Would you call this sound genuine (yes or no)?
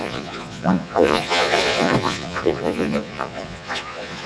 no